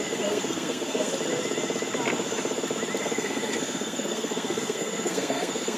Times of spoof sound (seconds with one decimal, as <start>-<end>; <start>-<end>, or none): 0.0-1.1; 3.0-5.8